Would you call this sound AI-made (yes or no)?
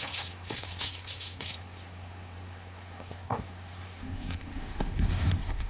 yes